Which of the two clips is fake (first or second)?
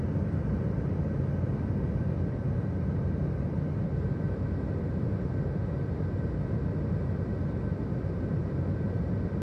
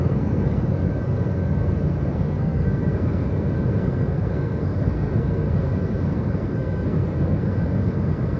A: second